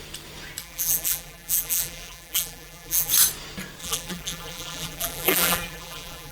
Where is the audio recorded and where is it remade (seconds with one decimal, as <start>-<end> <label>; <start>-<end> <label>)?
0.0-0.6 recorded; 0.6-3.1 remade; 3.1-3.8 recorded; 3.8-6.3 remade